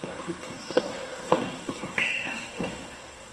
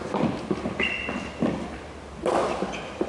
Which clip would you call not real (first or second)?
first